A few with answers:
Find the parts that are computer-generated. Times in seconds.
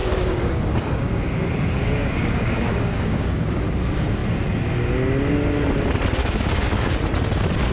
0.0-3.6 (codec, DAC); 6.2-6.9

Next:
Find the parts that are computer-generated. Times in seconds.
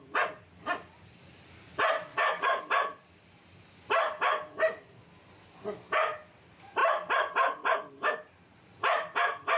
2.1-2.7 (codec, DAC)